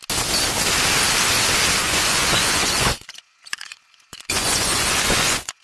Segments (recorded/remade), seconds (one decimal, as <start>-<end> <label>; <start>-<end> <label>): 0.0-1.8 recorded; 1.8-5.6 remade